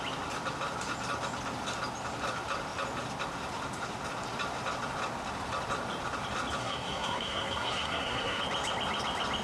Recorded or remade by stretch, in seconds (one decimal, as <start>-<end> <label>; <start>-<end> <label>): 0.0-6.6 recorded; 6.6-8.4 remade; 8.4-9.4 recorded